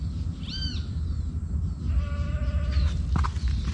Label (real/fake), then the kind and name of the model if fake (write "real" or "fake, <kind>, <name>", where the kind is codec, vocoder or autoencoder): real